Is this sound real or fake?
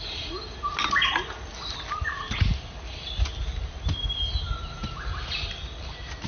real